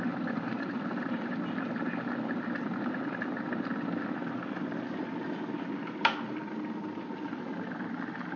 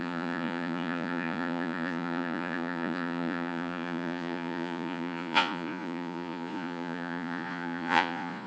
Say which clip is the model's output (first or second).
second